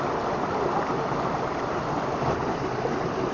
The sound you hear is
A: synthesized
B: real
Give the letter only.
B